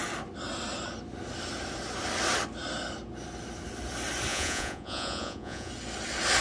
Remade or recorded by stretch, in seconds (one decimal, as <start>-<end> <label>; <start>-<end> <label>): 0.0-4.3 recorded; 4.3-5.7 remade; 5.7-6.4 recorded